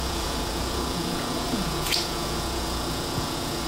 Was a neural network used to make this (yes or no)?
yes